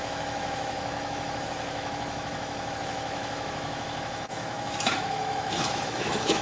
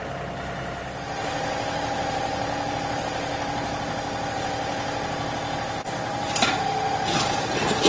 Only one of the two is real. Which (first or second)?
second